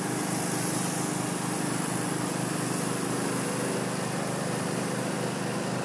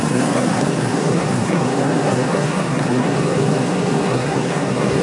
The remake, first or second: second